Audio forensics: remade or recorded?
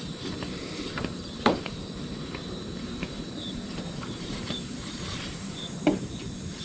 remade